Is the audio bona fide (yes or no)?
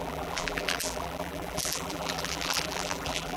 no